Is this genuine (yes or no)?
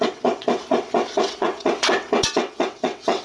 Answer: no